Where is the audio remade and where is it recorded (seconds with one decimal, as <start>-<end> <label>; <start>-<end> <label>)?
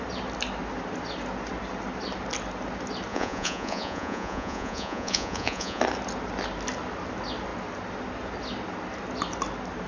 0.0-3.1 recorded; 3.1-5.8 remade; 5.8-9.9 recorded